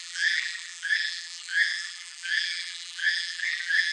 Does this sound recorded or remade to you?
remade